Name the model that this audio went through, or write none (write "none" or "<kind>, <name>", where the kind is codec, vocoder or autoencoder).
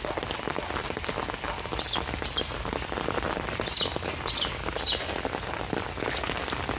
none